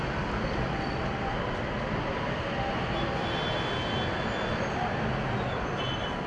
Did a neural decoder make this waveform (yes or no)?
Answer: no